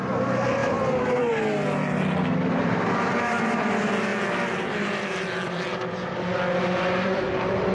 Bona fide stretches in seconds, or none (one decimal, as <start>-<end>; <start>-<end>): 0.0-0.6; 1.3-4.1; 7.3-7.7